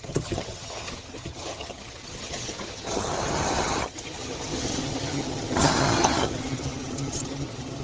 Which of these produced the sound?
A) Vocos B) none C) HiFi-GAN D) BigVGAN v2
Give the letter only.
C